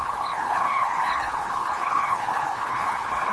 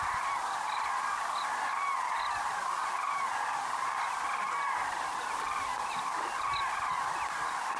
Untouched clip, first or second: second